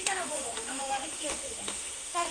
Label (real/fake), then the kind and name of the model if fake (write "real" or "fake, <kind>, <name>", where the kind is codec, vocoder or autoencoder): fake, autoencoder, DAC-VAE